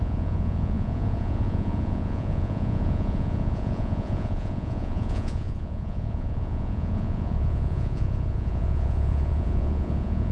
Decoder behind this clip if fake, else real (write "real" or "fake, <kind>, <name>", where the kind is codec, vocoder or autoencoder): fake, vocoder, Vocos